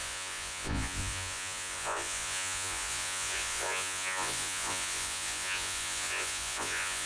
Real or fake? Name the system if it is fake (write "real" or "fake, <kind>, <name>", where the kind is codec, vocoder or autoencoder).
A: fake, vocoder, Vocos